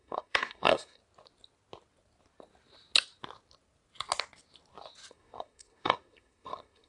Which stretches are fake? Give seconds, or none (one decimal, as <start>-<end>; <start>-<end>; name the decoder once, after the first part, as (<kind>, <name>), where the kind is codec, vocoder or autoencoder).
0.0-1.0 (codec, SNAC); 5.1-6.9